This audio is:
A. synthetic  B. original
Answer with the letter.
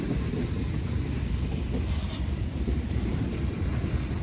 A